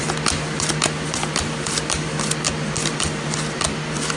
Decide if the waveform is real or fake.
real